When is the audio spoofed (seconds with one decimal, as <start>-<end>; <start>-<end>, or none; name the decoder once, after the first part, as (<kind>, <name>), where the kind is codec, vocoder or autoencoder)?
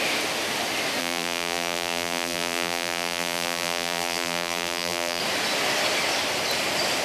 1.0-5.2 (vocoder, BigVGAN v2)